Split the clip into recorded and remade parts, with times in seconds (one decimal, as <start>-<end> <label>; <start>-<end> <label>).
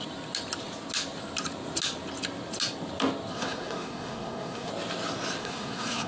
0.0-3.3 recorded; 3.3-4.7 remade; 4.7-5.4 recorded; 5.4-6.1 remade